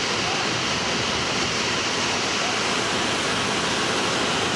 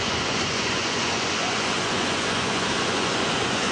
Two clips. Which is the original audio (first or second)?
first